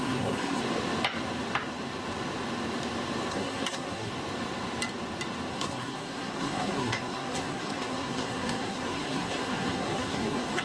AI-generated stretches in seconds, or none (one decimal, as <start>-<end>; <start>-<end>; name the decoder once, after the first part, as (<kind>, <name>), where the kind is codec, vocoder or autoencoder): 0.0-0.6 (codec, SNAC); 3.3-4.1; 5.5-10.6